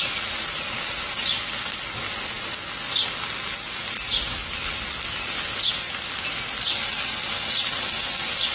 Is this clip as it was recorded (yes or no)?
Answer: yes